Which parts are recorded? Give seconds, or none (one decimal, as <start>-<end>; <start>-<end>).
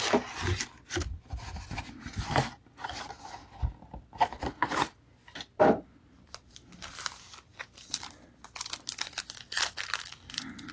0.0-10.7